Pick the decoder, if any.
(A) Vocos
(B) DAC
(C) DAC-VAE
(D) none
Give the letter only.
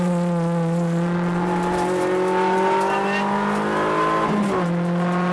D